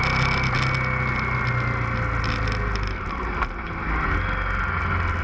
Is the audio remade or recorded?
recorded